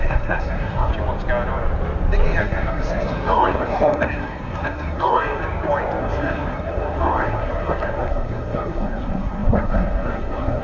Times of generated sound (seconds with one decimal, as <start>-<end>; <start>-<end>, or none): 0.0-0.9; 2.4-5.4; 6.0-10.6